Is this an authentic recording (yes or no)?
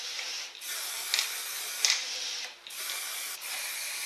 yes